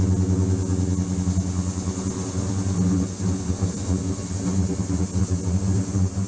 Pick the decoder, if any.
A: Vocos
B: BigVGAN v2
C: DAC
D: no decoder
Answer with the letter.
D